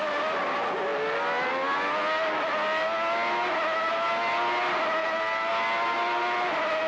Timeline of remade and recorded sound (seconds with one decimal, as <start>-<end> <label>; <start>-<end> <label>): 0.0-5.0 recorded; 5.0-5.5 remade; 5.5-6.9 recorded